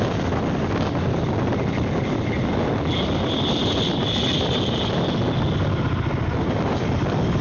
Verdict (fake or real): real